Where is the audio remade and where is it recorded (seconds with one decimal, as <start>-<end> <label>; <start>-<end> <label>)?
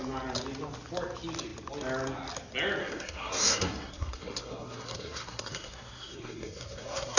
0.0-2.8 recorded; 2.8-7.2 remade